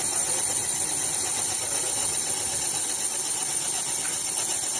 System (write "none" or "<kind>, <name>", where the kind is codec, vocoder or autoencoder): none